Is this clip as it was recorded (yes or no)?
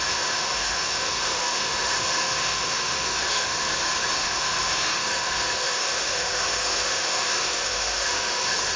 no